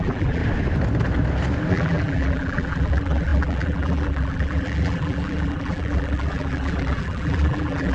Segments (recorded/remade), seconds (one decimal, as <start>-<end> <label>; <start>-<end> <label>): 0.0-0.4 remade; 0.4-1.7 recorded; 1.7-7.9 remade